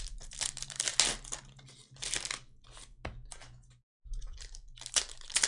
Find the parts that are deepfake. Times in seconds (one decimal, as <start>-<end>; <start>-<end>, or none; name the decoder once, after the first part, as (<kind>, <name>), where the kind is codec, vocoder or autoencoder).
0.0-0.9 (vocoder, BigVGAN v2); 4.2-5.5